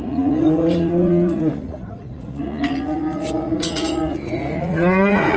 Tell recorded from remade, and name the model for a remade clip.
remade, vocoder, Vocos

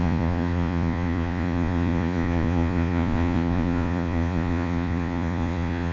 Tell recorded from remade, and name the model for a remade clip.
remade, vocoder, Vocos